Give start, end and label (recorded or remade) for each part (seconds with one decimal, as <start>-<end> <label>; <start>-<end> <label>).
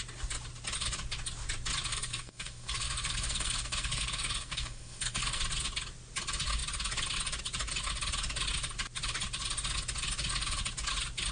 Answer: 0.0-1.9 recorded; 1.9-5.4 remade; 5.4-11.3 recorded